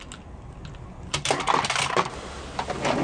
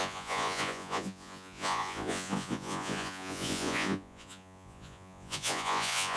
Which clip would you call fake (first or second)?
second